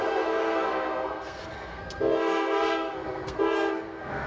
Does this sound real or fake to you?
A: fake